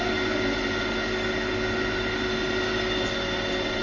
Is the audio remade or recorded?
recorded